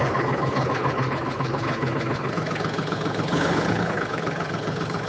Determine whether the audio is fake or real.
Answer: fake